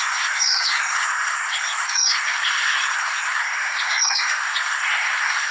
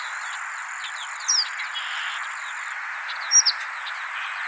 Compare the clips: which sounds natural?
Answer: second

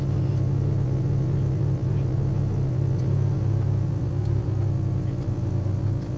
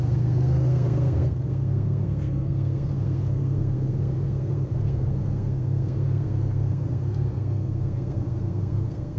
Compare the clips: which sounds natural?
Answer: first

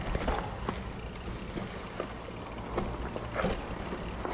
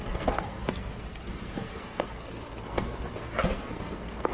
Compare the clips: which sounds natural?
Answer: first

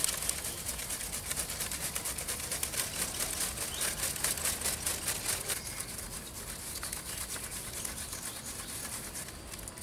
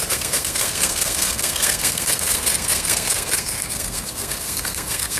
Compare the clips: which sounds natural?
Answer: first